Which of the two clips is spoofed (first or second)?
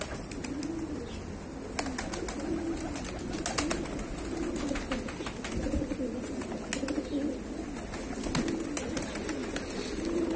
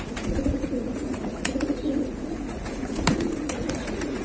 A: second